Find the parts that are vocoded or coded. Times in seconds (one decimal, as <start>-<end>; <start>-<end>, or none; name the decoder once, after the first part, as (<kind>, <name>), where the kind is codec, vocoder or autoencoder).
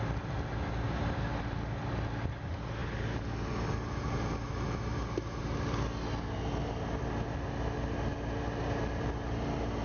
none